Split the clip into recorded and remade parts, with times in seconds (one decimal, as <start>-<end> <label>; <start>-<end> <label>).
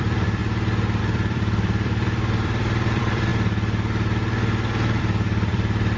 0.0-0.4 remade; 0.4-1.0 recorded; 1.0-3.3 remade; 3.3-5.0 recorded; 5.0-6.0 remade